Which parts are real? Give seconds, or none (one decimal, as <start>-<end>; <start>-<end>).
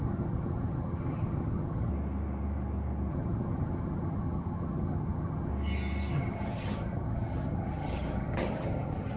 1.9-3.1; 5.5-6.1